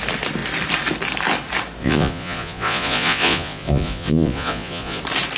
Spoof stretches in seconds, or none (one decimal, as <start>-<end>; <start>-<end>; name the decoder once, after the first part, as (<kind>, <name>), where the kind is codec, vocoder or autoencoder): 1.8-5.0 (vocoder, Vocos)